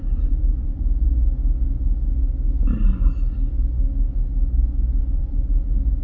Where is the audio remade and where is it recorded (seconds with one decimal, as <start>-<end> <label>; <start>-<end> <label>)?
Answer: 0.0-1.4 remade; 1.4-5.0 recorded; 5.0-6.0 remade